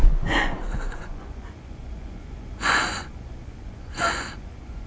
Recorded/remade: remade